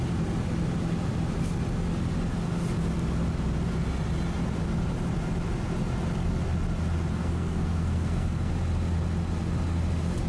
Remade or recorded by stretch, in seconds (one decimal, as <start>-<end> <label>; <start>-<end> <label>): 0.0-7.2 recorded; 7.2-8.5 remade; 8.5-10.3 recorded